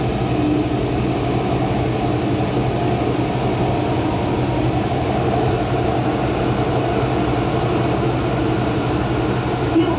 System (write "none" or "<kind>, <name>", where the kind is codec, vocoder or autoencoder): none